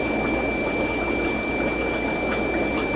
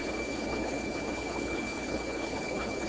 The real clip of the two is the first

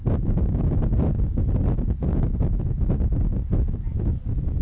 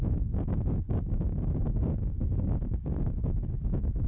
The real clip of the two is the first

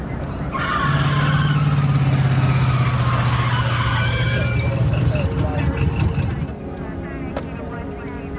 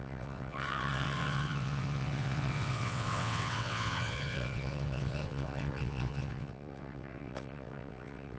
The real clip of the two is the first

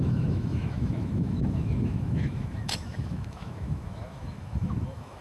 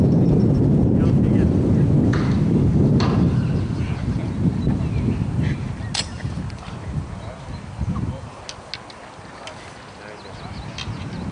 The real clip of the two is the second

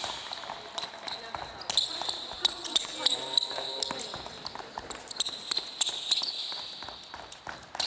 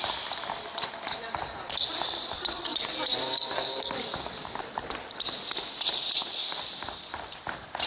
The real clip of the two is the first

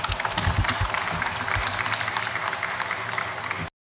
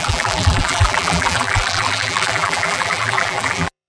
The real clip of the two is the first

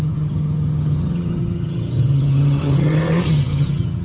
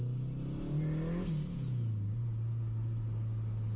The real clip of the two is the second